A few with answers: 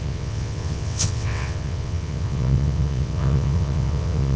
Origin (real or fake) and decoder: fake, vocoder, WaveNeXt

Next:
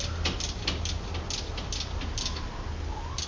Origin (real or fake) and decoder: real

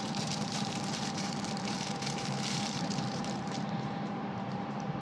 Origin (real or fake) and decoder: fake, vocoder, BigVGAN v2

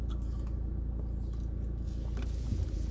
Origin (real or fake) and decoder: real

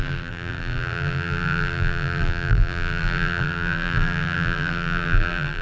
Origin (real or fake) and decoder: fake, vocoder, BigVGAN v2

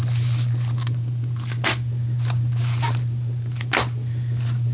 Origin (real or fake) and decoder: real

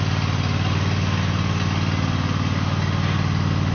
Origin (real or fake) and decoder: real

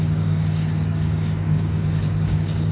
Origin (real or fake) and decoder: fake, codec, DAC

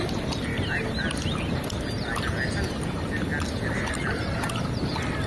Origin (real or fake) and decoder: real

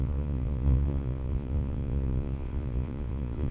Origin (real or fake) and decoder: fake, vocoder, Vocos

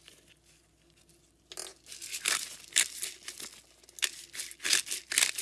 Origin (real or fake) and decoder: real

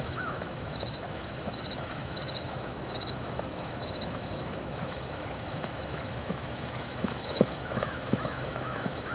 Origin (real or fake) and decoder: fake, autoencoder, DAC-VAE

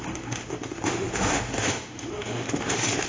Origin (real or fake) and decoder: fake, autoencoder, DAC-VAE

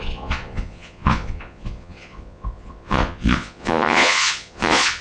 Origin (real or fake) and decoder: fake, vocoder, Vocos